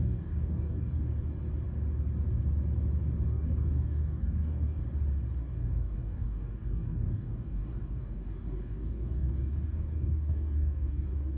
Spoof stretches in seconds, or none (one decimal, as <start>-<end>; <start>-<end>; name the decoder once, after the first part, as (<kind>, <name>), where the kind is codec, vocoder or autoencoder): 0.0-1.1 (codec, DAC); 3.3-4.8; 5.4-11.4